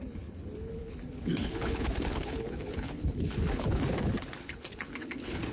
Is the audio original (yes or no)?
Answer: no